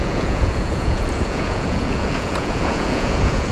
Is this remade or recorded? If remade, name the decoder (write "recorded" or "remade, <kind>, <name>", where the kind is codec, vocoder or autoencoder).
remade, vocoder, Vocos